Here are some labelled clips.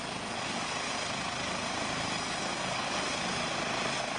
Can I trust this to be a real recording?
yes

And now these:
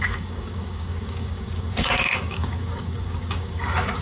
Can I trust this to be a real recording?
no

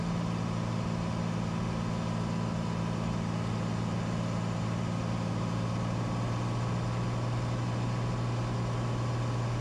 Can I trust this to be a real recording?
yes